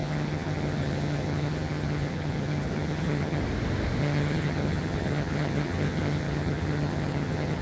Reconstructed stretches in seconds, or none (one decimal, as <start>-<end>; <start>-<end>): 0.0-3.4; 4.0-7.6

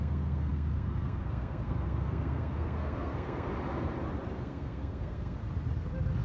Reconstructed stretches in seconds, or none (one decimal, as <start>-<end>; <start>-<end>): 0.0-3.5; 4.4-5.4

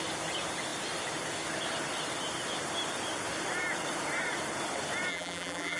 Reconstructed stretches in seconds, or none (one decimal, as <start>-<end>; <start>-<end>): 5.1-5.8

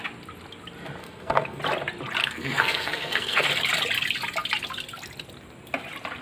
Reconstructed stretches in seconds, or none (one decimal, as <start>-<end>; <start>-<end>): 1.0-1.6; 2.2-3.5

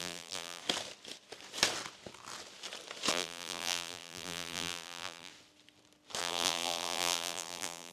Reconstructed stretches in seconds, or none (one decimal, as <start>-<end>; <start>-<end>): 0.0-0.6; 3.1-5.3; 6.2-7.9